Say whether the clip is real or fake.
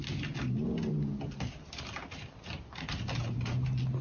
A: real